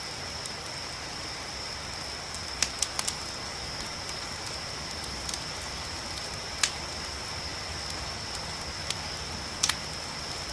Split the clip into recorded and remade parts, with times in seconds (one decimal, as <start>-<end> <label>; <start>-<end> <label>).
0.0-10.5 recorded